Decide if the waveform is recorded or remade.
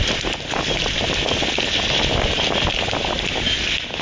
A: recorded